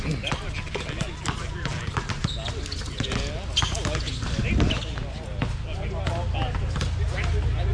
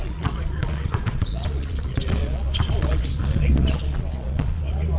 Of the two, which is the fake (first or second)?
second